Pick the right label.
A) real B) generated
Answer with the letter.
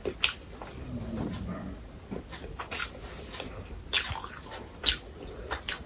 A